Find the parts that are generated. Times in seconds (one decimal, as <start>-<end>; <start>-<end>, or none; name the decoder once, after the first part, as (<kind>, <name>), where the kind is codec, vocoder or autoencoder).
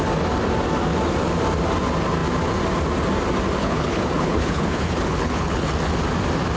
3.6-5.7 (codec, HILCodec)